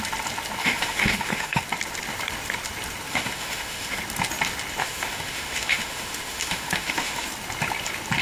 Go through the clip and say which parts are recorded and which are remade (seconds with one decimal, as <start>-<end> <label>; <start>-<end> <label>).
0.0-0.6 recorded; 0.6-1.6 remade; 1.6-3.1 recorded; 3.1-4.0 remade; 4.0-4.8 recorded; 4.8-7.3 remade; 7.3-8.2 recorded